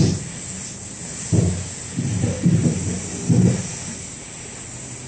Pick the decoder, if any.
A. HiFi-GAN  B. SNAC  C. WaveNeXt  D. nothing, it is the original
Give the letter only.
D